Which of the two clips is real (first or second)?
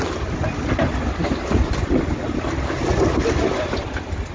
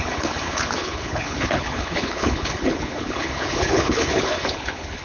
first